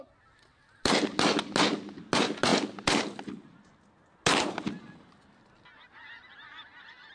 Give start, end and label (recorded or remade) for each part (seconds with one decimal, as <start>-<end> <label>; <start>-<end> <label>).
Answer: 0.0-7.1 recorded